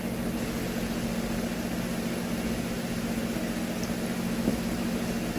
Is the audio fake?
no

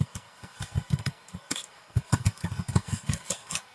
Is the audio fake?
yes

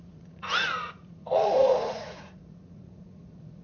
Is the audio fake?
yes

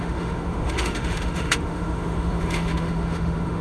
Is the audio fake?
yes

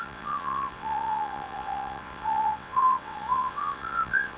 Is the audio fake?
yes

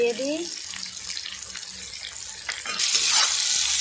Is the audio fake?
no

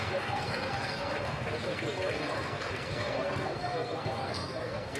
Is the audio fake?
yes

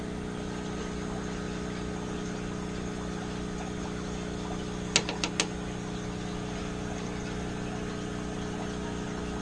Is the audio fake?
no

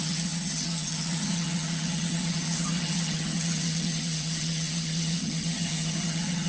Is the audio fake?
yes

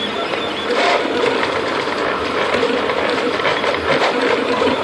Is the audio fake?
yes